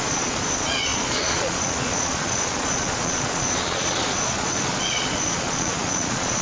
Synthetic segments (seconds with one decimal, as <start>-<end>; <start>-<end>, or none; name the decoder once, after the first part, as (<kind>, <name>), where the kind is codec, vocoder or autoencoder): 0.0-6.4 (vocoder, Vocos)